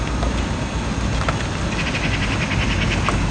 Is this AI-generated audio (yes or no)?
no